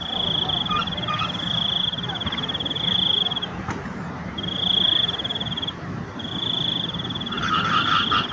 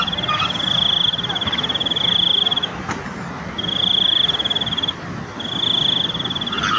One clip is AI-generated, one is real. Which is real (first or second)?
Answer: second